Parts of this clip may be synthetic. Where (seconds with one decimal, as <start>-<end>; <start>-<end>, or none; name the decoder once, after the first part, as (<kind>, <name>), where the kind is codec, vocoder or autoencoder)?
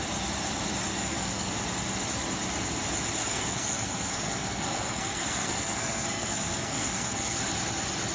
0.9-1.5 (codec, SNAC); 3.2-7.4